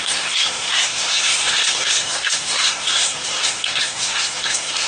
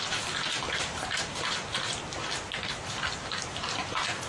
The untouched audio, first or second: second